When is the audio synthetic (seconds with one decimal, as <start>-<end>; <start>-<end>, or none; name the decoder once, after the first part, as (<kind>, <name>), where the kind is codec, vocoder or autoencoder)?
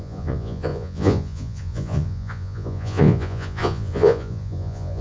0.0-5.0 (vocoder, Vocos)